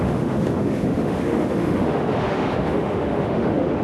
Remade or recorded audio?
remade